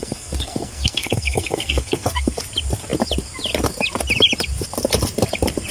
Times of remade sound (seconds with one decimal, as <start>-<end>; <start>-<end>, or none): 0.0-2.4

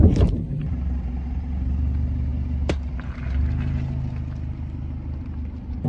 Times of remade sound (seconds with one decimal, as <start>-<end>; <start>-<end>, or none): 0.0-2.3

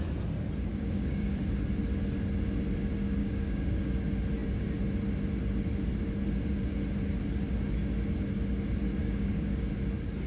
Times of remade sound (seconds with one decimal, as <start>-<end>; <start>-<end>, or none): 0.7-1.4; 3.2-3.9; 9.0-9.7

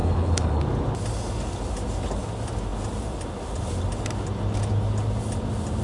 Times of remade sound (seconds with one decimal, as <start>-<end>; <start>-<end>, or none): 0.0-0.6

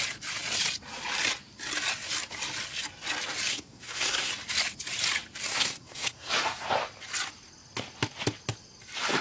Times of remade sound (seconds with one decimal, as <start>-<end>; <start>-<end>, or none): 3.5-4.3; 5.5-6.3